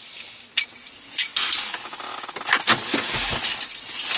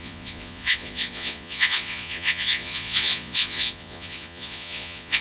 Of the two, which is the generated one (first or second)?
second